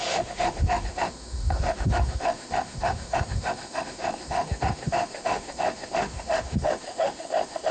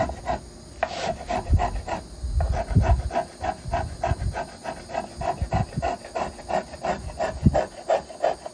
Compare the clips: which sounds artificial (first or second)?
first